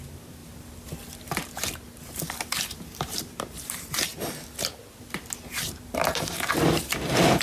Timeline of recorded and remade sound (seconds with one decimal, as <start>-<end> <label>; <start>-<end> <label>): 0.0-0.4 remade; 0.4-2.4 recorded; 2.4-4.1 remade; 4.1-5.5 recorded; 5.5-7.4 remade